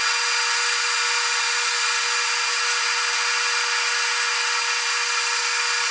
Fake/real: real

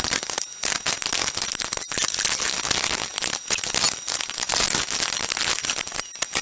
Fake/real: real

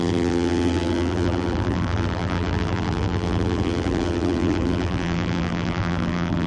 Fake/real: fake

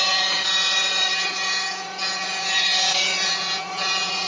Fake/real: fake